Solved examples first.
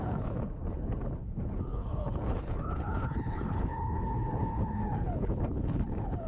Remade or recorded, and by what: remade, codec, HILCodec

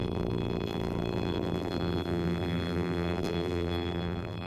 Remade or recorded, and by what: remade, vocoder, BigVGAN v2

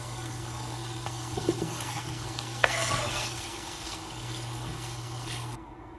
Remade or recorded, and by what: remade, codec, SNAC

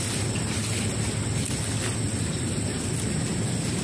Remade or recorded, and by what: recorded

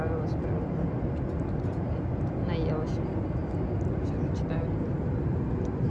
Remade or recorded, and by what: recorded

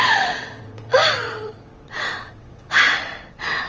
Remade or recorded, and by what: remade, vocoder, WaveNeXt